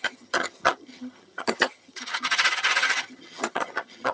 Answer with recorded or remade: remade